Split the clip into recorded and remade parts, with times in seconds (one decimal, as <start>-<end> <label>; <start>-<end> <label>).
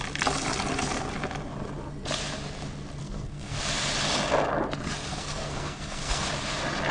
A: 0.0-3.0 recorded; 3.0-3.6 remade; 3.6-5.1 recorded; 5.1-6.3 remade; 6.3-6.9 recorded